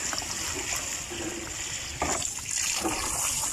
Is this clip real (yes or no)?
yes